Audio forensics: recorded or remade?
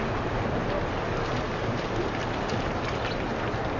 recorded